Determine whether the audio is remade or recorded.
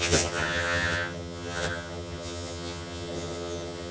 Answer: remade